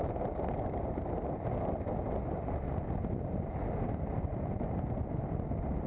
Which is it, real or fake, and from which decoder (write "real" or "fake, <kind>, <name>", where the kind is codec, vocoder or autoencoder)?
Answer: real